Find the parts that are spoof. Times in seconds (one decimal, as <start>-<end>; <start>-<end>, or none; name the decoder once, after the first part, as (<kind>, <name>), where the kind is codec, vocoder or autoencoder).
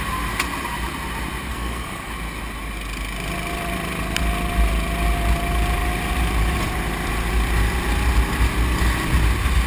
1.5-2.1 (codec, SNAC)